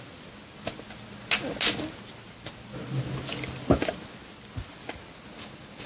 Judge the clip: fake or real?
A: real